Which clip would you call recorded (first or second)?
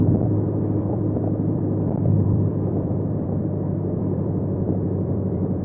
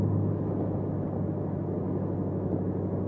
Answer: second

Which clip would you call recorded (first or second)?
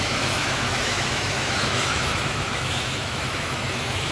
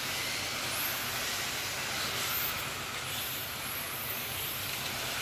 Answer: second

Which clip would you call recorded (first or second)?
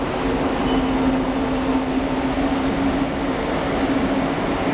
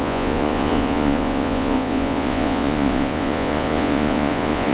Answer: first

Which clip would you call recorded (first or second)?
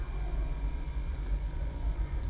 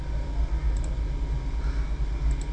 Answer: second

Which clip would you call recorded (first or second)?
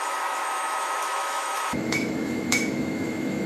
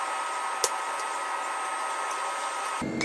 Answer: second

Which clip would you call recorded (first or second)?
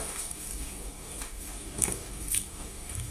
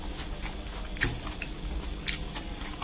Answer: second